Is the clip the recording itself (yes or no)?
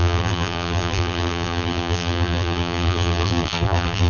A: no